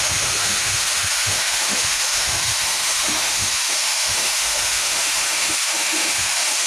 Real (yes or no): no